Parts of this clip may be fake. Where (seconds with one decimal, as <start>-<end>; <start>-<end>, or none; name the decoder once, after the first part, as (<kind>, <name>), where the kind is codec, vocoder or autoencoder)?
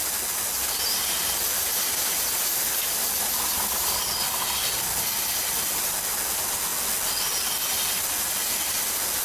1.5-4.0 (vocoder, BigVGAN v2)